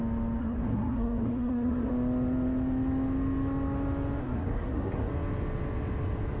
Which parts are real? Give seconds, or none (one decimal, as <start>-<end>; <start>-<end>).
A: 0.0-0.4; 1.9-4.2; 5.1-6.4